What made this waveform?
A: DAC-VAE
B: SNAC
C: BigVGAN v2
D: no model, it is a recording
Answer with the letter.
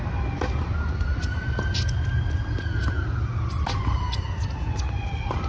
D